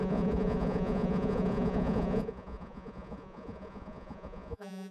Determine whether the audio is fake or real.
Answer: fake